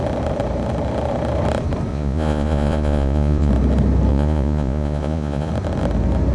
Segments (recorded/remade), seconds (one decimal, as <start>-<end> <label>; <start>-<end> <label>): 0.0-1.9 recorded; 1.9-3.5 remade; 3.5-4.1 recorded; 4.1-5.5 remade; 5.5-6.3 recorded